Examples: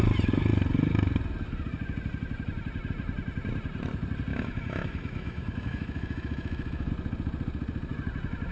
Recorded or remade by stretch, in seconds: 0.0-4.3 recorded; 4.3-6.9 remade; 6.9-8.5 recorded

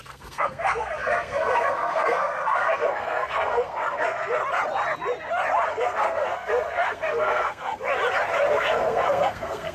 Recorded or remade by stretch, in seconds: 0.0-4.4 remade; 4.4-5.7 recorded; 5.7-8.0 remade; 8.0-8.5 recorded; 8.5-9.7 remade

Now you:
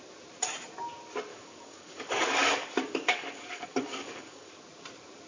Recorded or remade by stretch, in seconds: 0.0-1.3 recorded; 1.3-4.5 remade; 4.5-5.3 recorded

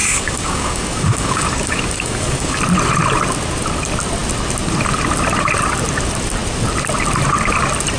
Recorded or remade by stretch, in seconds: 0.0-2.6 remade; 2.6-8.0 recorded